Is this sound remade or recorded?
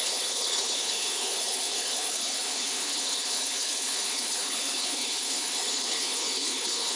remade